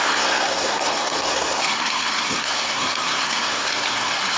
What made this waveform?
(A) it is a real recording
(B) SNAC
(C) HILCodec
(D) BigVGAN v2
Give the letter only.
B